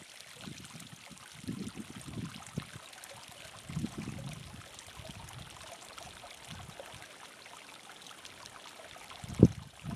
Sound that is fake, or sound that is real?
real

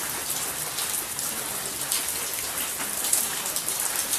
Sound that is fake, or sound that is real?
real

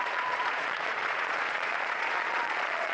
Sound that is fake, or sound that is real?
fake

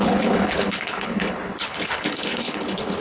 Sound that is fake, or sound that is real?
fake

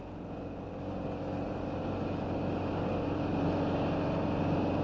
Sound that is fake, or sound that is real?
real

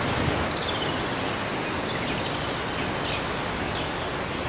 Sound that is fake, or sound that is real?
real